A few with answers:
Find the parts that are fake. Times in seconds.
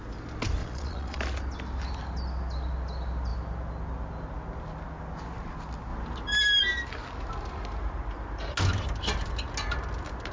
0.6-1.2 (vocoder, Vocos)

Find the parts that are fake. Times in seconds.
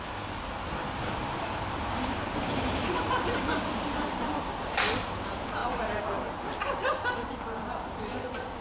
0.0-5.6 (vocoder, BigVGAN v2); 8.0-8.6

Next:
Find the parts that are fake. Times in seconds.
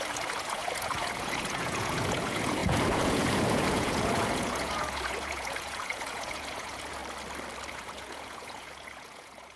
0.0-7.0 (vocoder, Vocos); 7.7-9.6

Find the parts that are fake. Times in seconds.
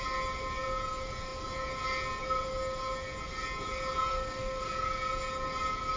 4.1-4.6 (codec, SNAC)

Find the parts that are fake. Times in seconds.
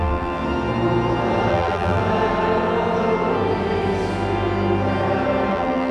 0.0-0.4 (vocoder, BigVGAN v2); 1.5-2.0; 5.5-5.9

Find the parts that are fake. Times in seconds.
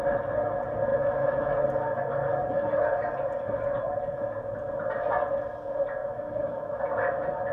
0.9-1.5 (autoencoder, DAC-VAE); 6.0-6.8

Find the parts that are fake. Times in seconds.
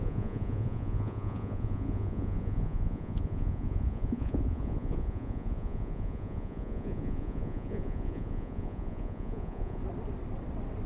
0.0-9.8 (vocoder, Vocos)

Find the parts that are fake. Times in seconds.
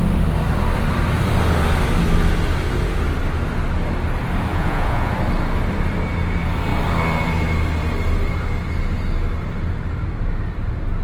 4.5-5.1 (vocoder, Vocos)